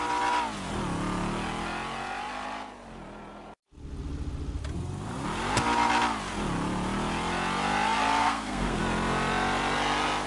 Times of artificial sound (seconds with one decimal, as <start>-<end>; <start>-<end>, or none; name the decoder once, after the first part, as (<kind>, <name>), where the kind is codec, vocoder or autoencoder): 8.2-8.8 (codec, SNAC)